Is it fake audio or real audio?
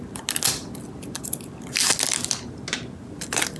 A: real